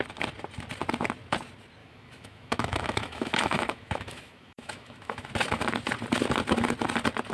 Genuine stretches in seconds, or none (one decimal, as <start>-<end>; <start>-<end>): 0.0-1.8; 5.3-7.3